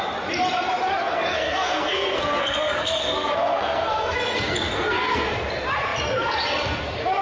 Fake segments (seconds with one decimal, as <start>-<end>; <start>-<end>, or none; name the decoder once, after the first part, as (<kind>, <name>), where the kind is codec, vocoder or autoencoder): 1.0-5.3 (codec, SNAC)